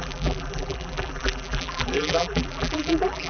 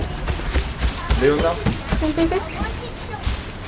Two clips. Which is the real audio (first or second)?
second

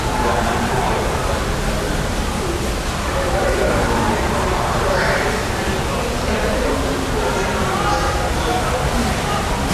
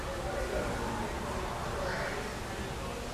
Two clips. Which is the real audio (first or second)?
second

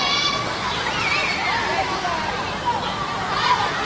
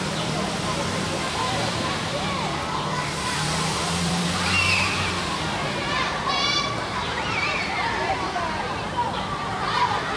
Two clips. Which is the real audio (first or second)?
first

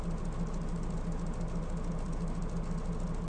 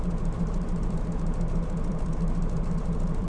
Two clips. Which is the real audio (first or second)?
first